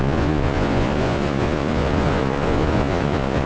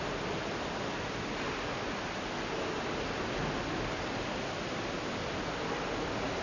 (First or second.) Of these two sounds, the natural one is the second